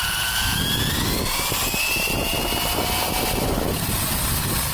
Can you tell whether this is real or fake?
real